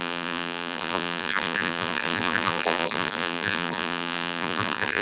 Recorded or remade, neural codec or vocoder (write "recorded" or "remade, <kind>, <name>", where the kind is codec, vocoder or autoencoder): remade, vocoder, BigVGAN v2